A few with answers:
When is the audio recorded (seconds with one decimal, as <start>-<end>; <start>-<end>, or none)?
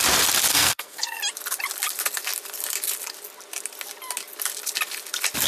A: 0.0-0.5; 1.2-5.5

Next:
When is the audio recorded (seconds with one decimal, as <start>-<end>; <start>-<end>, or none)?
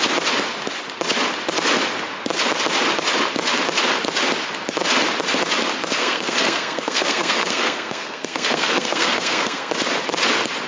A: 0.0-6.0; 9.7-10.7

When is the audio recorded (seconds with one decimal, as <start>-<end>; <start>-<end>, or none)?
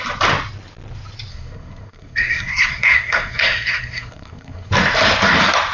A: 0.0-1.3; 4.7-5.7